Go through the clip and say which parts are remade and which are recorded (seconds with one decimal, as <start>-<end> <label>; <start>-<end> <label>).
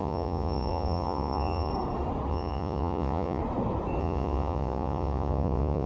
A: 0.0-1.7 remade; 1.7-2.3 recorded; 2.3-3.4 remade; 3.4-4.0 recorded; 4.0-5.9 remade